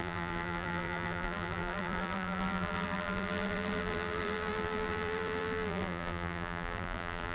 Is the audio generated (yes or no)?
yes